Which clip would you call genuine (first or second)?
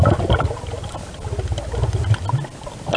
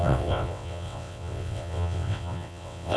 first